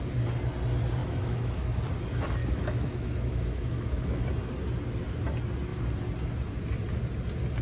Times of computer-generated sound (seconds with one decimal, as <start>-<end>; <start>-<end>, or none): 1.0-1.8; 2.4-4.2